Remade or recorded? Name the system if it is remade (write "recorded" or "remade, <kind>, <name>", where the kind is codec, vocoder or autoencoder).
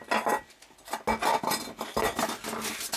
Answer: recorded